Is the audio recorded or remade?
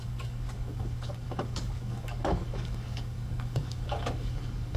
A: remade